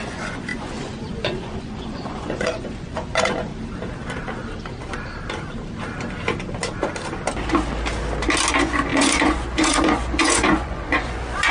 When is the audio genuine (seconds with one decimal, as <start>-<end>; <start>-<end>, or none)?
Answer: 3.5-8.5